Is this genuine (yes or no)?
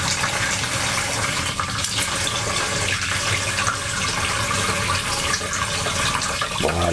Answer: yes